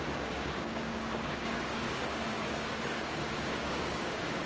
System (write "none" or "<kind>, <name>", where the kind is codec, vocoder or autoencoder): codec, DAC